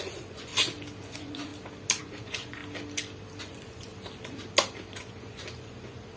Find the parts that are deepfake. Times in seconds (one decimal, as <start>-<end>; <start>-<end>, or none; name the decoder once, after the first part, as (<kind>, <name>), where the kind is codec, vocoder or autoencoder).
0.0-0.5 (vocoder, Vocos); 1.0-1.5; 2.0-2.6; 3.4-3.9; 4.9-6.2